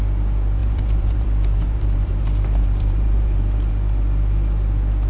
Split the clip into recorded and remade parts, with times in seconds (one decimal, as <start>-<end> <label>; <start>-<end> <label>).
0.0-0.6 recorded; 0.6-3.7 remade; 3.7-5.1 recorded